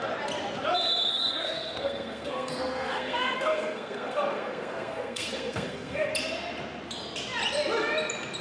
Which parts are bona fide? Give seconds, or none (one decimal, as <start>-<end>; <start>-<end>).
0.0-1.1; 6.1-8.4